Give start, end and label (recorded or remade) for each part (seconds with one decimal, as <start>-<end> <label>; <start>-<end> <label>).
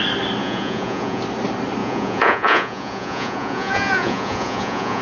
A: 0.0-0.4 recorded; 0.4-1.2 remade; 1.2-1.8 recorded; 1.8-5.0 remade